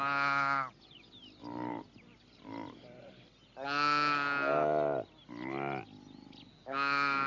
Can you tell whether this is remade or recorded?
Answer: recorded